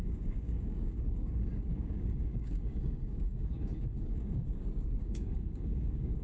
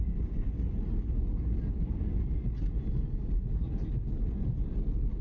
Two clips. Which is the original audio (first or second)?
second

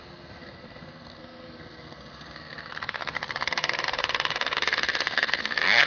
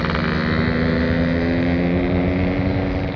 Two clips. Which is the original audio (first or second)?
second